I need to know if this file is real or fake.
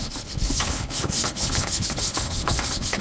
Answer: fake